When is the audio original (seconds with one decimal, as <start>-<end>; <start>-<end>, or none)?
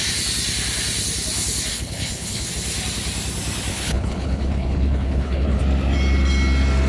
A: 0.0-1.7; 2.5-3.7; 5.6-6.9